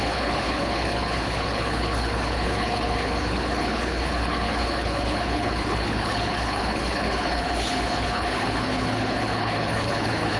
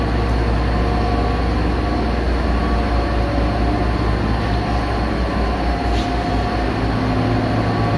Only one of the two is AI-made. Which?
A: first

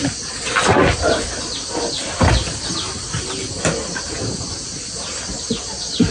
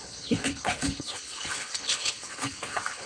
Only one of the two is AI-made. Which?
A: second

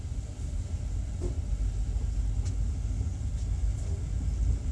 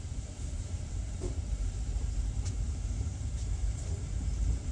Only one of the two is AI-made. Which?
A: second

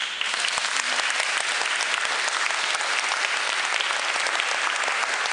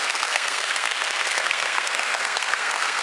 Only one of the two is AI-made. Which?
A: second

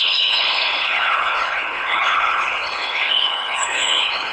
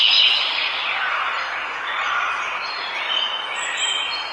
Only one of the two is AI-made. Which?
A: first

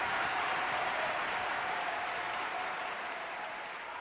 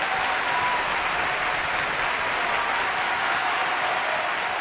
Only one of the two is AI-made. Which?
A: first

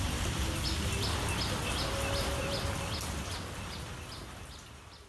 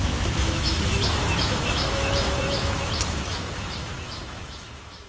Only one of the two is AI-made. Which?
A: second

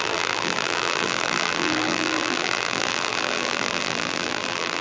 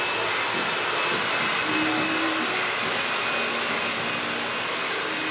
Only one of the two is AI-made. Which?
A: first